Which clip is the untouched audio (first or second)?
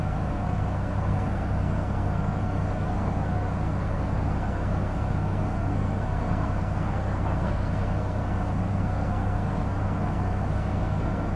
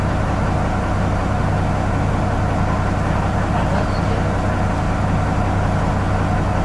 second